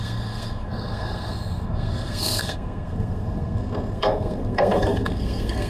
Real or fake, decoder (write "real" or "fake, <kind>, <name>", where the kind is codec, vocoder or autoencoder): fake, codec, SNAC